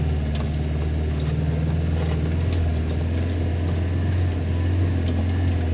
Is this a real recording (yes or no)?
yes